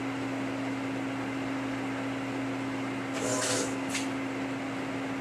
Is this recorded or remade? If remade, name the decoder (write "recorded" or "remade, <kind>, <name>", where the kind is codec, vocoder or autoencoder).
recorded